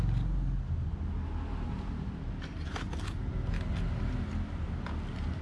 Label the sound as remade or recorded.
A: recorded